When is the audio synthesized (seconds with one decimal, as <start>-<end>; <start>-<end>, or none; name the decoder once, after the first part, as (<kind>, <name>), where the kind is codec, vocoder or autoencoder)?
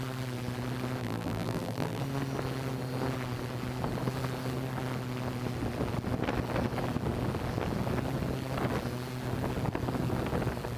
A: 1.0-2.0 (vocoder, BigVGAN v2)